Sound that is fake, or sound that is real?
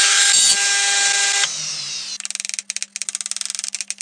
real